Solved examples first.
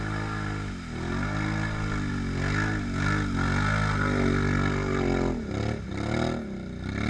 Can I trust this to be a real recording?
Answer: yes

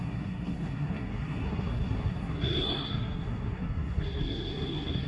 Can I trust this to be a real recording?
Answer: no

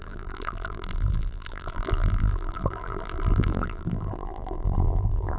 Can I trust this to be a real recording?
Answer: no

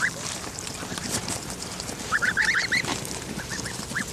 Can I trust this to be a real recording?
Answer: yes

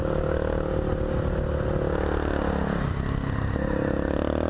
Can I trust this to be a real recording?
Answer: yes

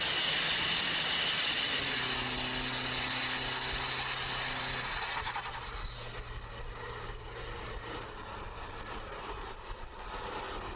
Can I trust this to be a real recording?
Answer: yes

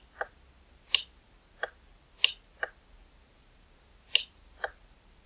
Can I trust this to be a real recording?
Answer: yes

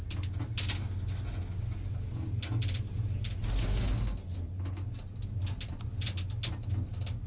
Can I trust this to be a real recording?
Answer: yes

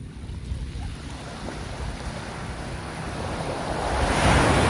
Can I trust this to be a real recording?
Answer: yes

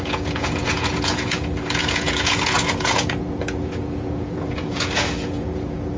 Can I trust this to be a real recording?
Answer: no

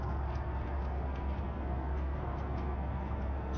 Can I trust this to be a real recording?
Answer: no